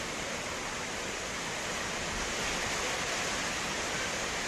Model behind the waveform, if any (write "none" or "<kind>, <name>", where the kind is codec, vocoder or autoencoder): none